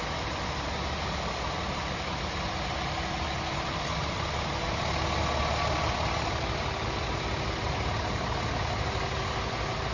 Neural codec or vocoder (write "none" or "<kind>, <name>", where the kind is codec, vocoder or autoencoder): none